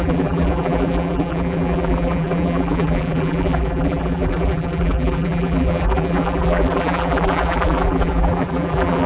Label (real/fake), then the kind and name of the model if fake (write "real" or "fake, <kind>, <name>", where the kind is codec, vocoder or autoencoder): fake, vocoder, BigVGAN v2